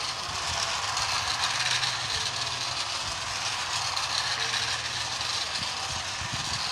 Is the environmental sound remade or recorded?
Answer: recorded